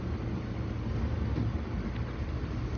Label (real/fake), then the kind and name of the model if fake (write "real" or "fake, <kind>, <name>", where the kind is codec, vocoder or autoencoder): real